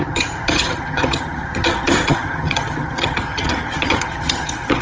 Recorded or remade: remade